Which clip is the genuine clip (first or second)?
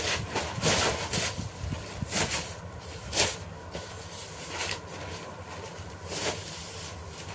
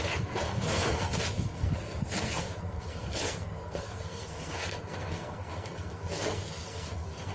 first